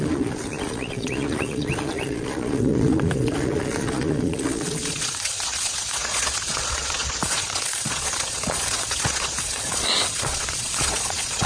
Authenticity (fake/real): fake